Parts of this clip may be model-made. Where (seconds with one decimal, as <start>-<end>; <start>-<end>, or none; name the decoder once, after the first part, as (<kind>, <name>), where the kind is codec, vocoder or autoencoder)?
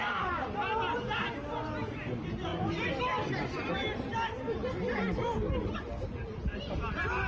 none